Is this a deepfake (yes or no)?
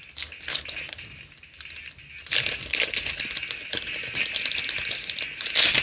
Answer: no